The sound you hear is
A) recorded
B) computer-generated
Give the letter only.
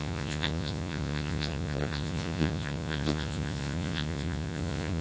B